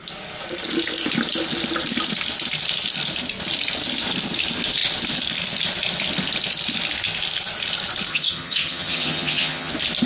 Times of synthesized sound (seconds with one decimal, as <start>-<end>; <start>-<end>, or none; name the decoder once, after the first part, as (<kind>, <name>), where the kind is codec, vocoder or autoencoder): 8.1-9.7 (vocoder, HiFi-GAN)